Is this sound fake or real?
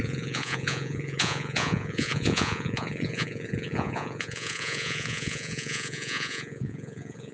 fake